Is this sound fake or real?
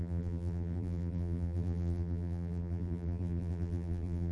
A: fake